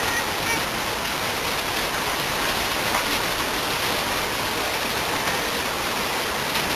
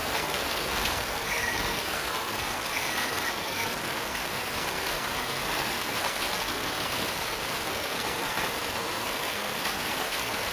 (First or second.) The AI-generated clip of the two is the second